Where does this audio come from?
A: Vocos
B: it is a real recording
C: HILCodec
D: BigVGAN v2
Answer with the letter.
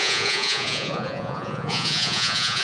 A